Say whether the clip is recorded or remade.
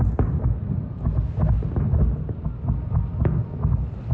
recorded